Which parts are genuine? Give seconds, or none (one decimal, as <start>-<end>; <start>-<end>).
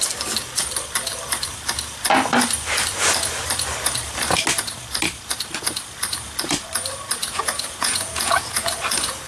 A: 0.0-7.2; 8.7-9.3